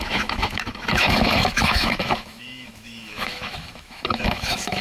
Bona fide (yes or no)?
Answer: no